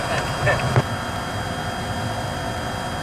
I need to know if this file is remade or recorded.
recorded